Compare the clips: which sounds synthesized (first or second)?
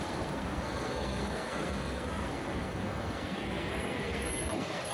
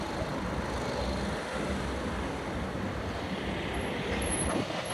first